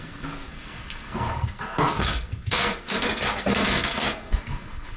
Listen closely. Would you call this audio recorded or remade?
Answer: remade